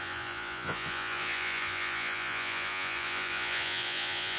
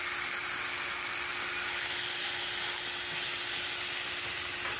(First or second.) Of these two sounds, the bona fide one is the second